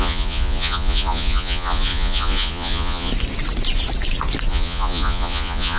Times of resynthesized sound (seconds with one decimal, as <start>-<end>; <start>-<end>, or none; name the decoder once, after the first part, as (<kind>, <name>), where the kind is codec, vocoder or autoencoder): 0.0-3.1 (vocoder, Vocos); 4.5-5.8